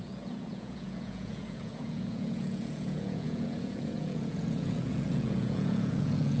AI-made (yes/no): yes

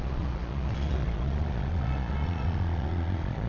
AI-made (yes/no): yes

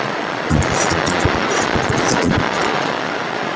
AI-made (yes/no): yes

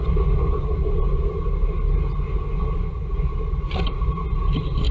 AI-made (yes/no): no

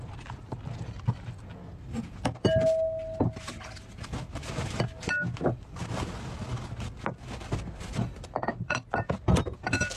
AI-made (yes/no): no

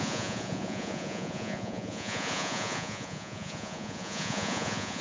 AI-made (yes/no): yes